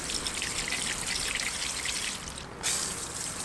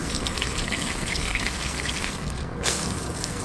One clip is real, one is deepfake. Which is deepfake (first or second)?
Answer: second